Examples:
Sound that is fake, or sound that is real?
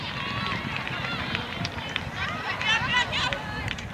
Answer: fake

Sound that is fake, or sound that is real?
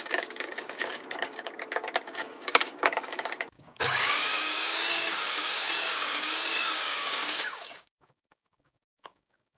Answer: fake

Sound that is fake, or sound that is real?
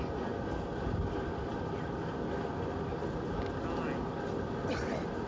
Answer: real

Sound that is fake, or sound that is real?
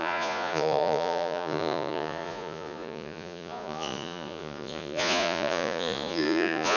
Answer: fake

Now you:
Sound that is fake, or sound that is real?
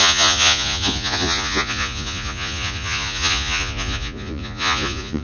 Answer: fake